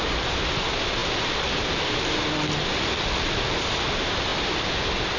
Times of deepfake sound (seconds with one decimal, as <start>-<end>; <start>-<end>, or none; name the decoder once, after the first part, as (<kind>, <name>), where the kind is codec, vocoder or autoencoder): none

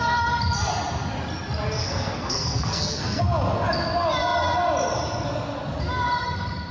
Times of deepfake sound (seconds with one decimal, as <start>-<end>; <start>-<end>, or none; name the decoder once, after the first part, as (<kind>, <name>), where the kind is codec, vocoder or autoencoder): 1.8-3.2 (codec, SNAC)

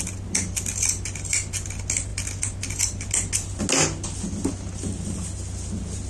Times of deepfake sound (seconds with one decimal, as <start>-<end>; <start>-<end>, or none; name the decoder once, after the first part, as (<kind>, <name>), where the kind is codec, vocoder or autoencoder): none